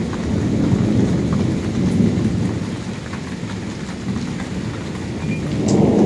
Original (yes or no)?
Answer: yes